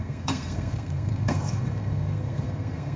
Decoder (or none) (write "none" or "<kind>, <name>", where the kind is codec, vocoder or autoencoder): codec, SNAC